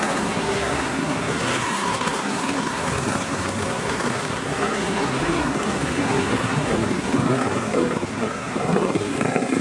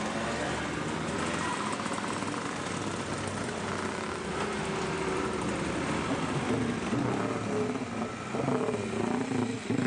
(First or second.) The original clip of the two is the second